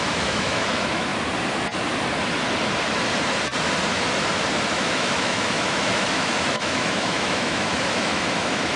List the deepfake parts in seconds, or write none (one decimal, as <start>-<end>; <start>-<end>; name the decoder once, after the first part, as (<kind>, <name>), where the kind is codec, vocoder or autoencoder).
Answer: 0.0-1.1 (autoencoder, DAC-VAE); 4.7-8.8